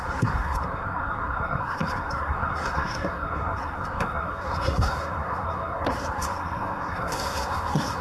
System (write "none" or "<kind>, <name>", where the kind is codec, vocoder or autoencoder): codec, SNAC